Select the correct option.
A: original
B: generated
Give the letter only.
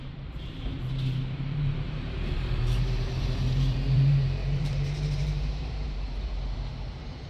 B